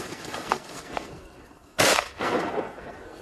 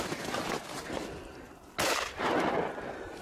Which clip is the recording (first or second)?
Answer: second